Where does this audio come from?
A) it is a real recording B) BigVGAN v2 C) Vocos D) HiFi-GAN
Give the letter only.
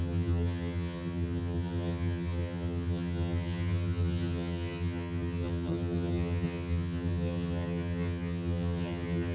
D